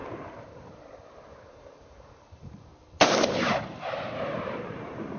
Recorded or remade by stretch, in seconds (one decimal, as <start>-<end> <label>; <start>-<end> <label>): 0.0-2.7 remade; 2.7-3.4 recorded; 3.4-5.2 remade